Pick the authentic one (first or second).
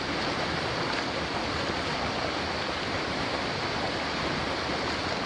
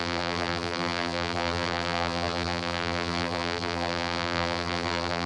first